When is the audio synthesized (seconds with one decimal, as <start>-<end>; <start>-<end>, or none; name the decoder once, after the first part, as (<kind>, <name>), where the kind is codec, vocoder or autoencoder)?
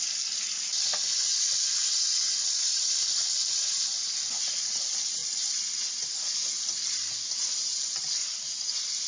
none